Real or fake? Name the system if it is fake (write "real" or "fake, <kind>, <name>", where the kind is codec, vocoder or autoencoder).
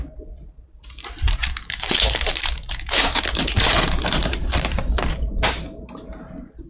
fake, vocoder, BigVGAN v2